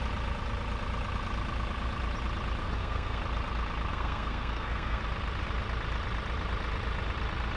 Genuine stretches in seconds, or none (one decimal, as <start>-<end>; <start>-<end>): 0.0-2.6; 3.2-3.9; 5.0-7.6